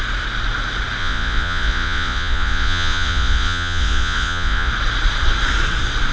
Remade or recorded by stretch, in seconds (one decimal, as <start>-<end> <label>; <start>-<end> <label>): 0.0-1.0 recorded; 1.0-4.7 remade; 4.7-6.1 recorded